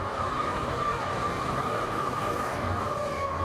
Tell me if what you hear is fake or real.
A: fake